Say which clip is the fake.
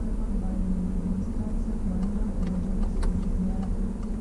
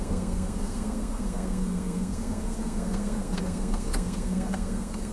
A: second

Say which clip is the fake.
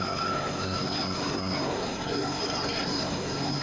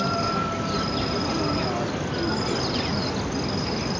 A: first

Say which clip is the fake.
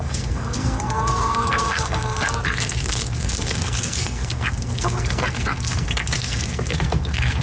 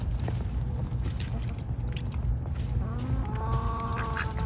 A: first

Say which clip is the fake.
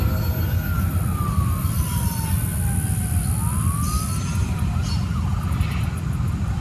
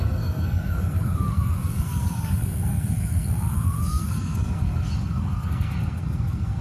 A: second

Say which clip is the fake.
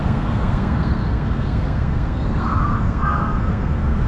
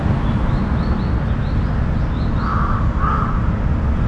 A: first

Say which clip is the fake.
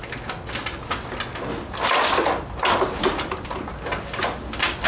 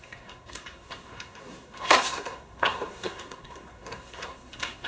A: second